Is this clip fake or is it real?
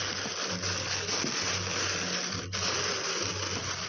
real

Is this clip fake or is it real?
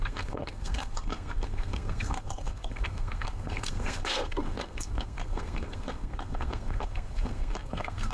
fake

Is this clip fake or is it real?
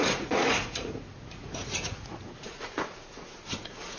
fake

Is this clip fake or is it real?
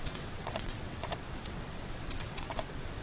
fake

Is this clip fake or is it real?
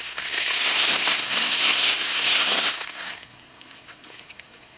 fake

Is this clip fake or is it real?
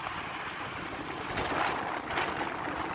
real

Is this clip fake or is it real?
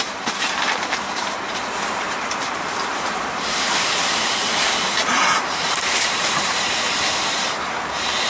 fake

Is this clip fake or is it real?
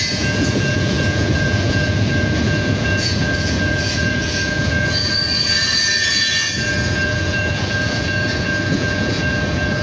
fake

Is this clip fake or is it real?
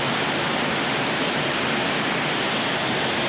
real